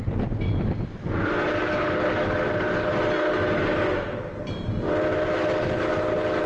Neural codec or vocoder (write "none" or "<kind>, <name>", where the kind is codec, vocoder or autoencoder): none